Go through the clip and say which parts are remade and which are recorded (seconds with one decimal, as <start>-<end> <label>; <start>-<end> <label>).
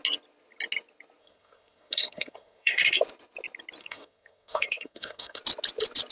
0.0-1.2 recorded; 1.2-3.0 remade; 3.0-3.8 recorded; 3.8-5.4 remade; 5.4-6.1 recorded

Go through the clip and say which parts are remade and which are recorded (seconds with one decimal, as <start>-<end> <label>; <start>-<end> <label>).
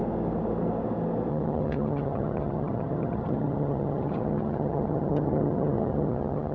0.0-1.3 recorded; 1.3-6.5 remade